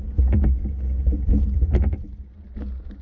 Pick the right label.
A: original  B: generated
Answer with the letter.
A